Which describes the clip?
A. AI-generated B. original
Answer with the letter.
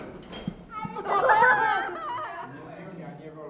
B